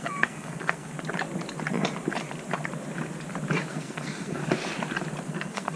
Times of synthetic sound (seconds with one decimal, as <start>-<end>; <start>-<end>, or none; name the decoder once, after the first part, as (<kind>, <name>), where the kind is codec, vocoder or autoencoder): 0.0-0.9 (codec, SNAC); 3.7-4.4; 5.3-5.8